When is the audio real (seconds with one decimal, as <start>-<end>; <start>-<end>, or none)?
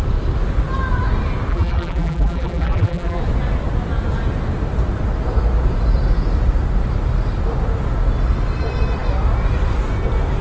0.0-1.5; 3.2-10.4